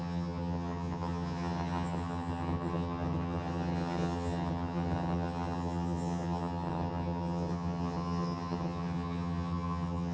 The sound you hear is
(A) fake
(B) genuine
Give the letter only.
A